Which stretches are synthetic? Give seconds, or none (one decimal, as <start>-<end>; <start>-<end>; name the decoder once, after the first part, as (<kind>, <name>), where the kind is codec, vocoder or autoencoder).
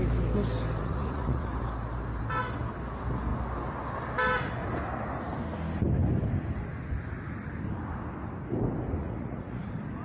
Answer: 0.8-1.5 (vocoder, Vocos); 9.0-9.6